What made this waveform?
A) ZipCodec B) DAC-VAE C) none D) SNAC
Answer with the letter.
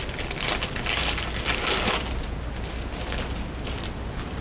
C